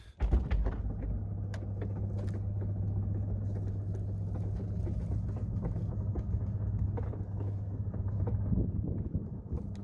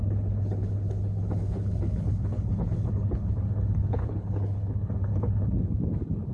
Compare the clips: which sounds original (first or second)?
first